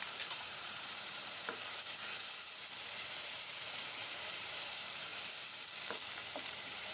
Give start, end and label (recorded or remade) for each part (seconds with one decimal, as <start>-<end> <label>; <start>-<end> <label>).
0.0-1.2 remade; 1.2-3.1 recorded; 3.1-5.1 remade; 5.1-6.4 recorded; 6.4-6.9 remade